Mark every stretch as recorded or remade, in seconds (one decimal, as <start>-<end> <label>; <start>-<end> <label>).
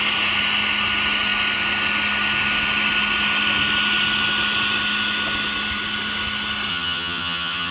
0.0-6.7 recorded; 6.7-7.7 remade